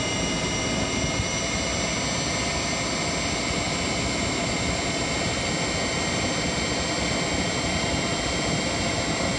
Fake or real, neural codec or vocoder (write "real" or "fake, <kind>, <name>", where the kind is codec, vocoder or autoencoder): real